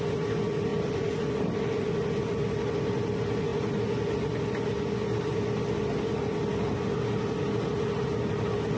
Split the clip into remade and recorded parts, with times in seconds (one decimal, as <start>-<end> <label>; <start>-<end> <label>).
0.0-0.7 recorded; 0.7-1.9 remade; 1.9-8.8 recorded